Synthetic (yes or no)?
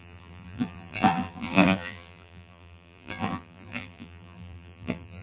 yes